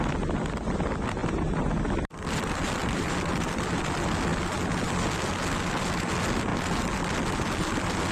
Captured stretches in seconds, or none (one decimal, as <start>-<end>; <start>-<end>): 0.0-2.8; 3.8-8.1